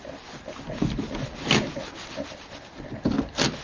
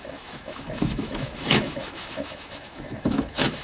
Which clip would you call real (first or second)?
first